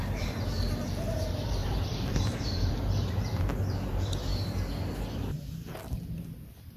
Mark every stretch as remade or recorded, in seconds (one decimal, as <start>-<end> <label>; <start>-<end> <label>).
0.0-4.3 remade; 4.3-6.8 recorded